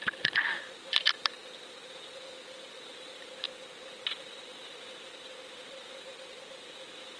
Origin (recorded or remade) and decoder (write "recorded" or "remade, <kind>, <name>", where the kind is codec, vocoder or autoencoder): remade, vocoder, BigVGAN v2